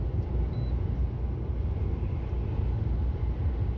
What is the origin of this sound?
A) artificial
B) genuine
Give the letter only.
B